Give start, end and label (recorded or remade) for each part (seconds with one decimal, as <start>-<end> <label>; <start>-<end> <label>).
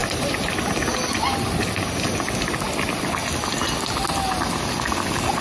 0.0-5.4 recorded